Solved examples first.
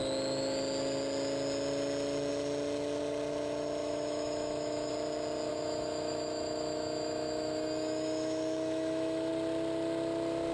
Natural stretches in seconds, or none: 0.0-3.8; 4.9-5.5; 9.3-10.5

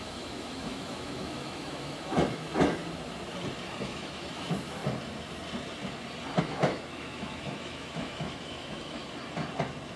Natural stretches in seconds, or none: 2.8-3.8; 4.8-6.4; 9.0-10.0

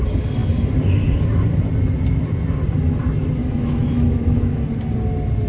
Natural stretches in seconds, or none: 0.0-3.4; 4.6-5.5

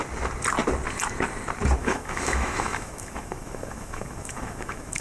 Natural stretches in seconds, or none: 0.0-1.8

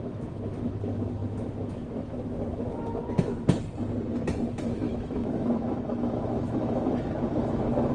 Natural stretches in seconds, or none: 3.0-4.6